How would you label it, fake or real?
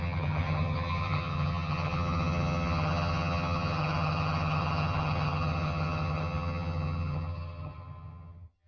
fake